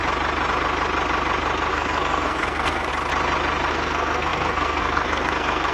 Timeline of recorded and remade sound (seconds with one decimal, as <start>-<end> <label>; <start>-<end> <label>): 0.0-1.7 recorded; 1.7-2.9 remade; 2.9-3.7 recorded; 3.7-5.7 remade